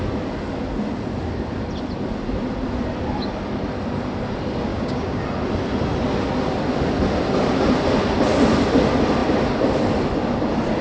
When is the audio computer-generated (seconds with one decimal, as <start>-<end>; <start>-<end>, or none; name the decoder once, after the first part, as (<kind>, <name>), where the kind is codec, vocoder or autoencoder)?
4.7-5.2 (codec, DAC)